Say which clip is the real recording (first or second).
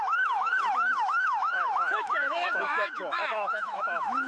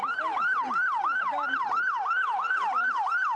second